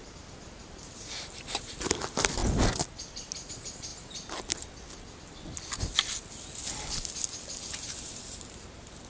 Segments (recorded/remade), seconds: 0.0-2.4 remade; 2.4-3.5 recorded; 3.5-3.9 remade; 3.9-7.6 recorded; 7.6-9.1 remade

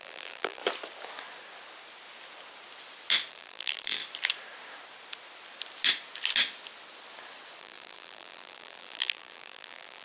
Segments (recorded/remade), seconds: 0.0-0.6 remade; 0.6-3.3 recorded; 3.3-4.0 remade; 4.0-7.6 recorded; 7.6-10.0 remade

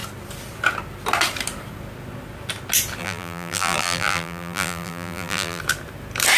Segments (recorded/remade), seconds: 0.0-3.0 recorded; 3.0-5.6 remade; 5.6-6.4 recorded

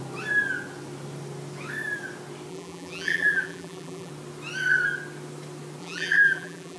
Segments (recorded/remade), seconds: 0.0-2.5 recorded; 2.5-4.1 remade; 4.1-5.8 recorded; 5.8-6.8 remade

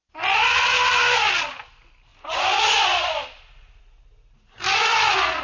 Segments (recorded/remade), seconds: 0.0-5.4 recorded

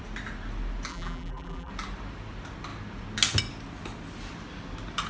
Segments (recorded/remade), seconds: 0.0-0.9 recorded; 0.9-1.7 remade; 1.7-5.1 recorded